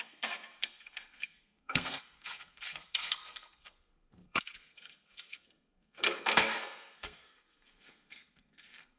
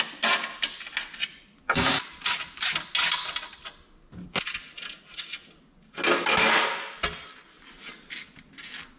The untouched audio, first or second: second